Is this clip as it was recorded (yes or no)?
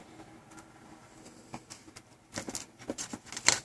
yes